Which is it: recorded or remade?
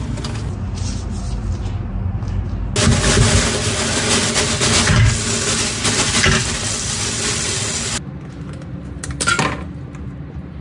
recorded